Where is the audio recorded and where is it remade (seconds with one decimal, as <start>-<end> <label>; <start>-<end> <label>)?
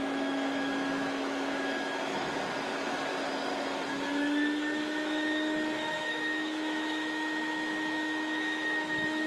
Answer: 0.0-3.1 remade; 3.1-3.9 recorded; 3.9-9.3 remade